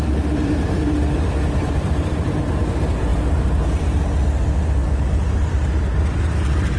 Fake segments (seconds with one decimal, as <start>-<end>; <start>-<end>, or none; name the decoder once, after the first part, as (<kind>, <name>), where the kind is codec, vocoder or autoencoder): 0.0-6.8 (vocoder, BigVGAN v2)

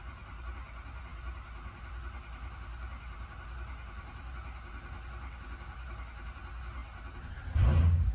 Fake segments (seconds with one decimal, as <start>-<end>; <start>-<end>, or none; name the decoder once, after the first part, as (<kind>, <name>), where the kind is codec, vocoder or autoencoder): none

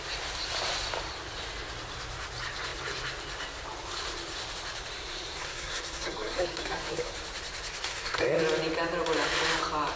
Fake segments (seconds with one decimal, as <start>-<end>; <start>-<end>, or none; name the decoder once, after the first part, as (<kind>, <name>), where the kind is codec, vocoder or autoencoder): 5.4-7.1 (codec, SNAC); 7.9-8.4

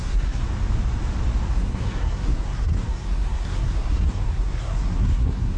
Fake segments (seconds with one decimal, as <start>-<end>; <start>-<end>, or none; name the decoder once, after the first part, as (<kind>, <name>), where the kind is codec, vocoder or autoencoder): 0.0-0.4 (codec, SNAC); 1.5-5.6